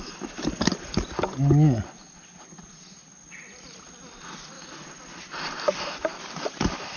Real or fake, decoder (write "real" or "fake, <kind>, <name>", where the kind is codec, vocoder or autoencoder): real